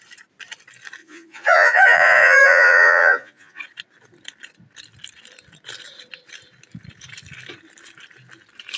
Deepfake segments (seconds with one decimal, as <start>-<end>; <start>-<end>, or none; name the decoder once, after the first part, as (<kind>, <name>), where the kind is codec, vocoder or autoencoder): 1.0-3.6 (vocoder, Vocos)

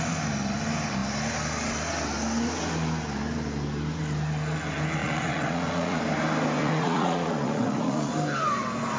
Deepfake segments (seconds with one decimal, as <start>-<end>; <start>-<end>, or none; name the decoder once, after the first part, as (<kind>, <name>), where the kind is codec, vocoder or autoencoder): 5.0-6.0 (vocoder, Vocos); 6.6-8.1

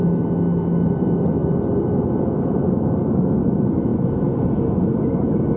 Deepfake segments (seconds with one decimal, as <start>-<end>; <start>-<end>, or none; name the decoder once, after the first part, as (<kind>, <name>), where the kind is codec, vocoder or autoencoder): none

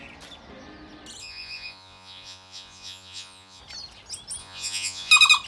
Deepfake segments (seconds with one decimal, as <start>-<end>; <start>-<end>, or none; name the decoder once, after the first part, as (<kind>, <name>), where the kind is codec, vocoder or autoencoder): 1.2-3.6 (vocoder, Vocos); 4.4-5.1

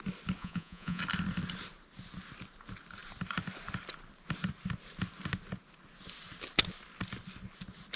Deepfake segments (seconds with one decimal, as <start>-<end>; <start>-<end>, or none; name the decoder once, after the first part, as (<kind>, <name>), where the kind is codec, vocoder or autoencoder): 0.4-1.0 (vocoder, Vocos)